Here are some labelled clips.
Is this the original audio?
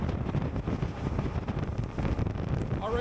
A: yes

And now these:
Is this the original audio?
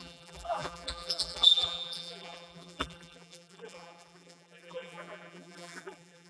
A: no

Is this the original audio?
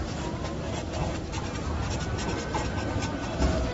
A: yes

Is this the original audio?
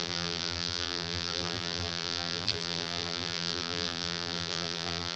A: no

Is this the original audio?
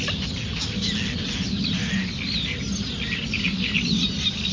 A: yes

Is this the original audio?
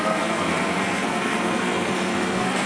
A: no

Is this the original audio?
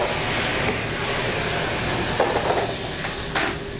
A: yes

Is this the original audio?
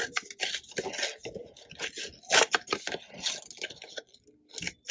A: yes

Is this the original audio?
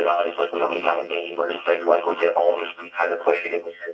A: no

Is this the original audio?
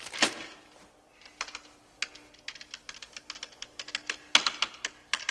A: yes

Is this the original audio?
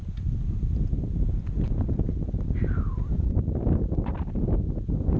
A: yes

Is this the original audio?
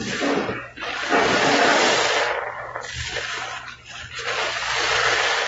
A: yes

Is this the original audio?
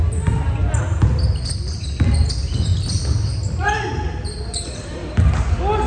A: yes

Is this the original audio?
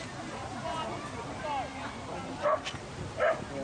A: yes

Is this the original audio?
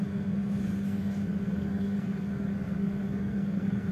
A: no